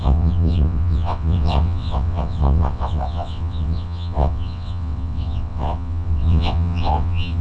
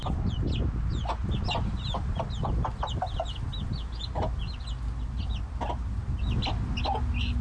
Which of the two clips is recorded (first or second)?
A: second